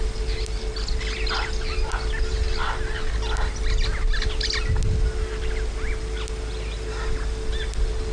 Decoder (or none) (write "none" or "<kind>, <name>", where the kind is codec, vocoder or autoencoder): none